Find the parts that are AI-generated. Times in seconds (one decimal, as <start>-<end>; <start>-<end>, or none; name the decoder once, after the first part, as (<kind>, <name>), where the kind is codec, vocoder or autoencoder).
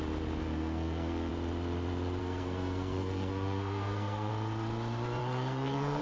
0.4-1.3 (codec, SNAC); 2.2-4.3; 5.2-6.0